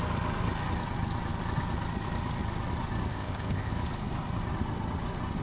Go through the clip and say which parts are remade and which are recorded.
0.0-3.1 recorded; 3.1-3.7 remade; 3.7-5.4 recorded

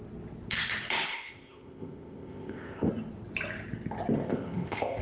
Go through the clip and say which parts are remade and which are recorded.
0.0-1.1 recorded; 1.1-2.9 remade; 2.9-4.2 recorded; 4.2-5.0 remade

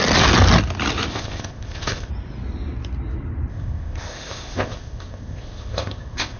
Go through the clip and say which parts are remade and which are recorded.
0.0-1.1 recorded; 1.1-2.1 remade; 2.1-3.5 recorded; 3.5-6.4 remade